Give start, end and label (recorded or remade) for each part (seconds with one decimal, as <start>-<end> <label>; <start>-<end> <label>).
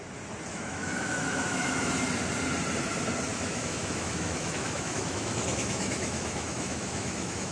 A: 0.0-0.5 recorded; 0.5-1.9 remade; 1.9-3.3 recorded; 3.3-7.5 remade